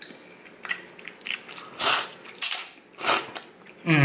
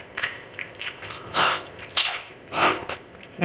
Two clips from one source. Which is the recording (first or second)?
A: first